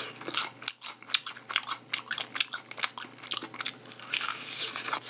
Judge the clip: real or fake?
real